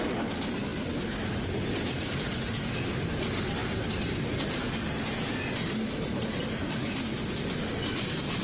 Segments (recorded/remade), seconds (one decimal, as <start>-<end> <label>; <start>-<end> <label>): 0.0-8.4 recorded